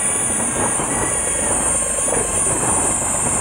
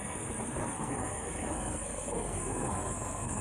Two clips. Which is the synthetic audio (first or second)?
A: second